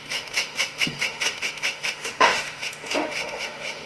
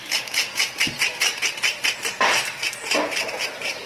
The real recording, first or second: second